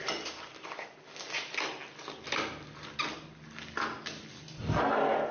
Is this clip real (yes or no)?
yes